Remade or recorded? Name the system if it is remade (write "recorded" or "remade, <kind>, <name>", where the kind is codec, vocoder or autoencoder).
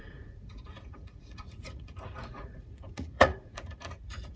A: remade, vocoder, Vocos